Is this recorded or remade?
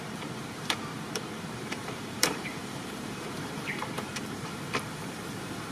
remade